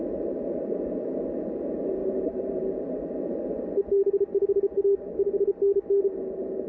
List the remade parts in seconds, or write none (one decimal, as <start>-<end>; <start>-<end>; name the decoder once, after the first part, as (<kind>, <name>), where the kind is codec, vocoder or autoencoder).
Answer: 2.0-2.6 (vocoder, BigVGAN v2)

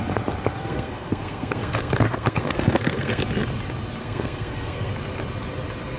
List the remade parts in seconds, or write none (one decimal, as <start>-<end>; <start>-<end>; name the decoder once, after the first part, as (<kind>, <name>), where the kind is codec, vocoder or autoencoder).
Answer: 0.6-3.2 (codec, SNAC); 4.0-4.9

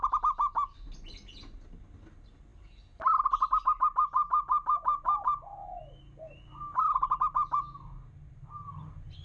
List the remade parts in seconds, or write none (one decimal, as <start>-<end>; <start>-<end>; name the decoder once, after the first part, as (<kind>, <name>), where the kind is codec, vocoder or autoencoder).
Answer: none

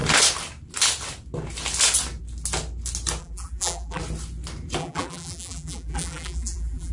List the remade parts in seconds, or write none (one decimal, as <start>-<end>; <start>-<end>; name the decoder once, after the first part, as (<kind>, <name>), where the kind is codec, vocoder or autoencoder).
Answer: 3.2-4.0 (vocoder, BigVGAN v2); 4.8-6.9

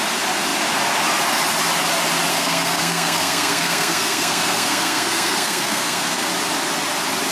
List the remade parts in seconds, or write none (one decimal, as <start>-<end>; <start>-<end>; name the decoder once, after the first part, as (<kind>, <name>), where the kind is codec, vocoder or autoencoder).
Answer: 2.3-6.3 (codec, SNAC)

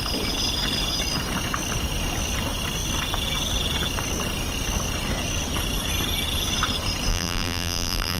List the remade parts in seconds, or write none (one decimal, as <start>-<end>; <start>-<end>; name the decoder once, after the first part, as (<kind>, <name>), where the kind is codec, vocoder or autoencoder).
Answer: 7.1-8.2 (vocoder, BigVGAN v2)

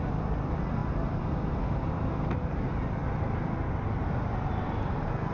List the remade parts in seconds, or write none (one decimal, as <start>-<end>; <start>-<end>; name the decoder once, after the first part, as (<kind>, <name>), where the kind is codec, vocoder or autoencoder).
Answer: none